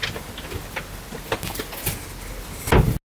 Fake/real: real